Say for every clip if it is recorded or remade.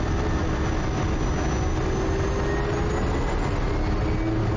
recorded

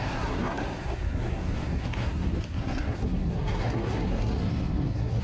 remade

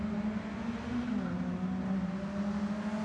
recorded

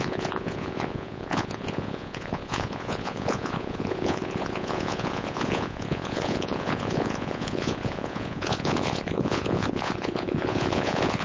remade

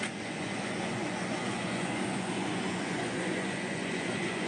remade